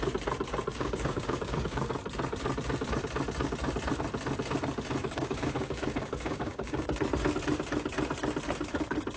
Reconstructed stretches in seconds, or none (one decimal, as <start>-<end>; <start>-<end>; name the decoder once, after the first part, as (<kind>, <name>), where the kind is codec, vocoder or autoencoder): 0.7-1.9 (codec, DAC); 5.0-7.0